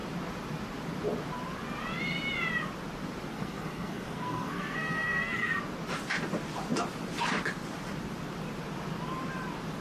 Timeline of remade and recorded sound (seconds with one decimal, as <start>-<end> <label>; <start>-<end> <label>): 0.0-3.3 recorded; 3.3-5.6 remade; 5.6-9.8 recorded

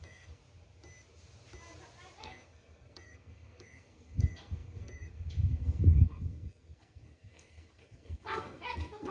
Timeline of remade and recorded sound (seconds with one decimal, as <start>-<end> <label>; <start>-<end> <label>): 0.0-0.4 remade; 0.4-2.2 recorded; 2.2-9.1 remade